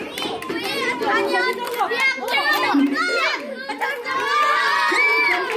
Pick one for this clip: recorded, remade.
recorded